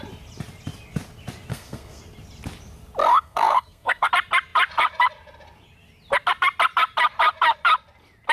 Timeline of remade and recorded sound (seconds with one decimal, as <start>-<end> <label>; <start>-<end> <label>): 0.0-1.5 recorded; 1.5-2.0 remade; 2.0-3.1 recorded; 3.1-4.1 remade; 4.1-8.3 recorded